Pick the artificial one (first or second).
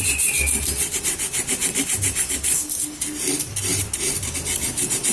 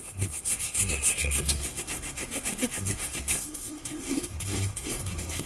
second